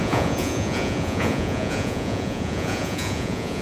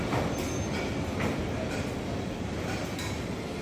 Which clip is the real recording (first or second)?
second